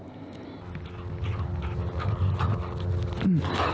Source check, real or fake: real